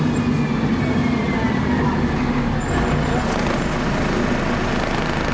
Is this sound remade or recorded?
recorded